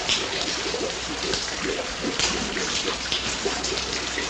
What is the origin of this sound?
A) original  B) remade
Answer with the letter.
A